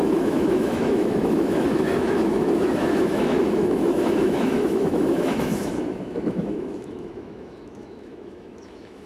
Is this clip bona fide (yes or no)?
no